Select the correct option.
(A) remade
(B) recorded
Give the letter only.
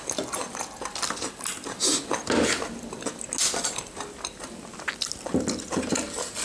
B